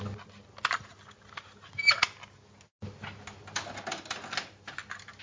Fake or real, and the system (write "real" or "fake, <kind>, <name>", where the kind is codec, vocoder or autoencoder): real